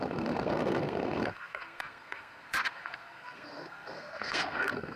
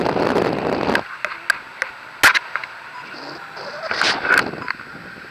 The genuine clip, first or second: second